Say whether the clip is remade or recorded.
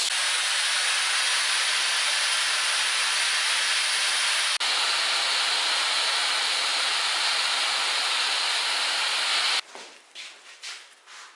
recorded